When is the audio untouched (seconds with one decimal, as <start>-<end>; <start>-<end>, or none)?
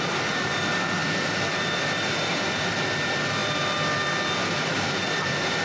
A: 0.0-1.0; 1.8-4.7